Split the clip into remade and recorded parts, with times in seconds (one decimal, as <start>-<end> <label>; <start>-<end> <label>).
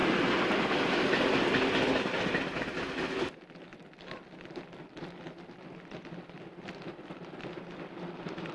0.0-8.5 recorded